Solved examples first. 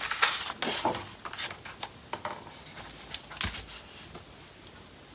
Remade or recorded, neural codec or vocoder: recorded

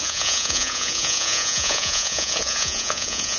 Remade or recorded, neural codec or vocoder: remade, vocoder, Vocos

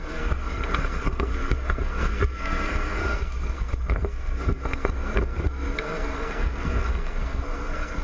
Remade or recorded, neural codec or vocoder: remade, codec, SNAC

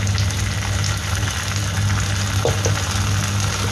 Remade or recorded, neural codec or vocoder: recorded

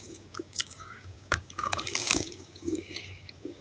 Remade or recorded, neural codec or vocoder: remade, codec, DAC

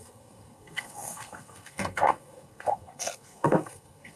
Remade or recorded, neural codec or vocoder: remade, codec, SNAC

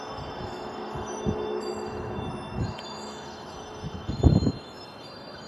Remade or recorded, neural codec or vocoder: remade, autoencoder, DAC-VAE